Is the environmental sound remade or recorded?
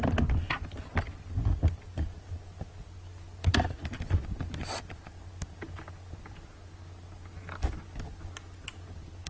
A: recorded